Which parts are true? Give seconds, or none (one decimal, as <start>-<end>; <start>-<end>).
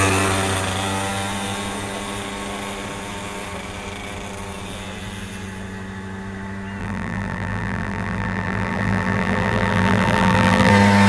0.0-6.8; 10.7-11.1